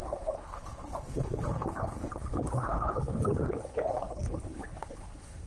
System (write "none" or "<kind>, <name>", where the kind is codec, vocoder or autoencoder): codec, HILCodec